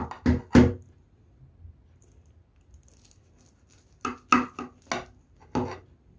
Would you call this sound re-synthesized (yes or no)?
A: no